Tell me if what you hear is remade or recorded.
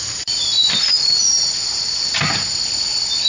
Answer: recorded